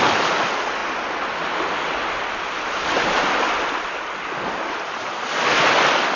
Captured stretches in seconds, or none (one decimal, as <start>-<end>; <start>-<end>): 0.0-6.2